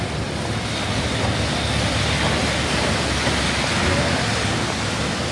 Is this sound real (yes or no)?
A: yes